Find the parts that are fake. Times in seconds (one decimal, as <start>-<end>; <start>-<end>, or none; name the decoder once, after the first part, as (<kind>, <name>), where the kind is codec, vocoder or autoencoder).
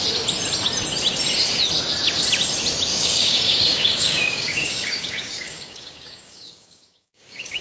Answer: 2.9-7.6 (codec, DAC)